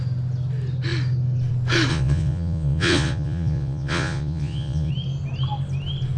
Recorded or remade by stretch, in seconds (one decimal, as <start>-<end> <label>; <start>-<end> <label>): 0.0-1.9 recorded; 1.9-4.9 remade; 4.9-6.2 recorded